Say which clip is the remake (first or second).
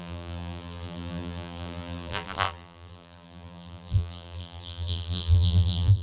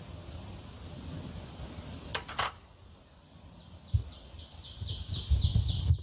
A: first